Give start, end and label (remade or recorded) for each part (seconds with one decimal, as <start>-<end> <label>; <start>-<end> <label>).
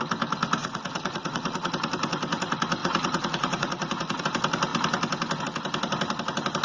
0.0-0.6 recorded; 0.6-1.7 remade; 1.7-2.8 recorded; 2.8-4.2 remade; 4.2-6.6 recorded